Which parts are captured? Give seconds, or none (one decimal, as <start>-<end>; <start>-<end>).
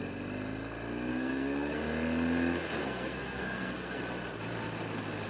0.0-1.1; 1.8-2.8; 4.0-5.3